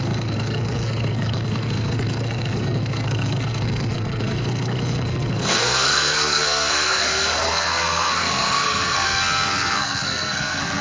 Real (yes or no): no